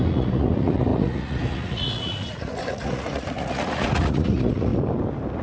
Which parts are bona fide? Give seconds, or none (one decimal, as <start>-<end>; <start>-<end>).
4.7-5.4